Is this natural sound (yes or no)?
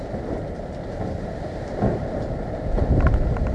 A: yes